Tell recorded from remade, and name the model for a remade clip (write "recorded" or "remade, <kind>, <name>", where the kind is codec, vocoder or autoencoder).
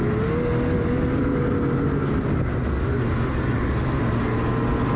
recorded